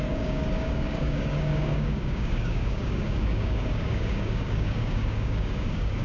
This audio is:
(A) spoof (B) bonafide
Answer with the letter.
A